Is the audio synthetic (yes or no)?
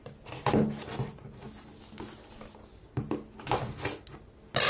no